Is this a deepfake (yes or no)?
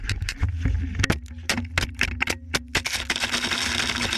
no